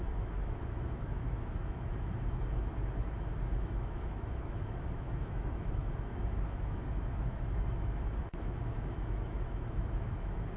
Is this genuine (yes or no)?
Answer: no